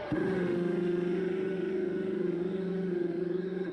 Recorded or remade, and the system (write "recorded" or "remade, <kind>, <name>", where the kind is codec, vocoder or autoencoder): remade, autoencoder, DAC-VAE